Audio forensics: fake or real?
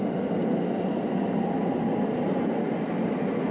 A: real